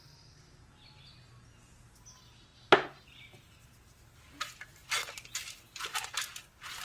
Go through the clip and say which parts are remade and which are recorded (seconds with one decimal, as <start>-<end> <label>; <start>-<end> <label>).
0.0-6.8 recorded